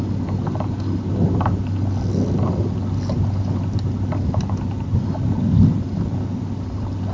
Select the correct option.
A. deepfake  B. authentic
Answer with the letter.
B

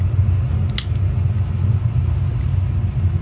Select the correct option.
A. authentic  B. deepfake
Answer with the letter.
A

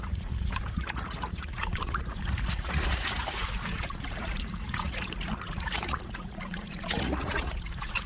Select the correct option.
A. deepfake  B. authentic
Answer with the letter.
A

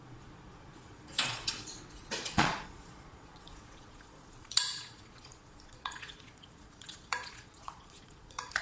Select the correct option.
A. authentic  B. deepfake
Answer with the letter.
B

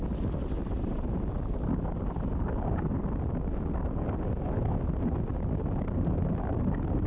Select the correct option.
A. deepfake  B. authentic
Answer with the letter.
B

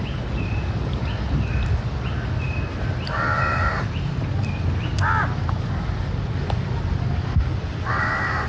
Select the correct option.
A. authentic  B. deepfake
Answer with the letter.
A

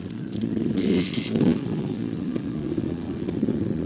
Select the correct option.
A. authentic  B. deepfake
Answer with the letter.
B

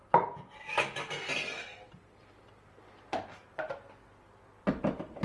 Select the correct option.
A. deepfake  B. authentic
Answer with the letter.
B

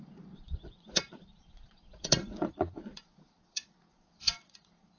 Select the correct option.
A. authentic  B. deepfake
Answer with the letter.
B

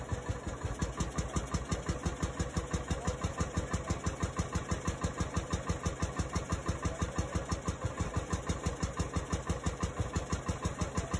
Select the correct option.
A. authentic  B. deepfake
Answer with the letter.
A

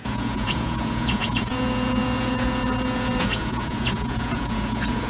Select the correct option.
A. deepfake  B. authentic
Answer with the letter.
A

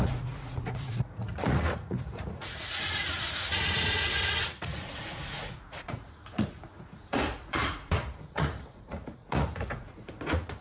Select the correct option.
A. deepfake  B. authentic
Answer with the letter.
A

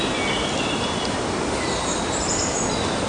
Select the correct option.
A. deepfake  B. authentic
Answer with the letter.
B